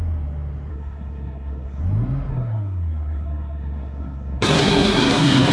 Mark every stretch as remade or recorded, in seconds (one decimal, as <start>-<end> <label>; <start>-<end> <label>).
0.0-0.7 recorded; 0.7-1.8 remade; 1.8-2.3 recorded; 2.3-5.5 remade